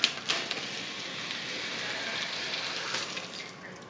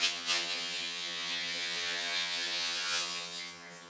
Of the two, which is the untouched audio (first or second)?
first